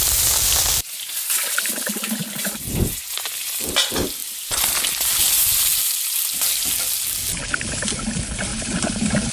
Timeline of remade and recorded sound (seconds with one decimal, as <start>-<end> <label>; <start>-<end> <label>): 0.0-8.5 recorded; 8.5-9.3 remade